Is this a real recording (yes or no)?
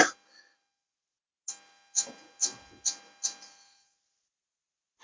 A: yes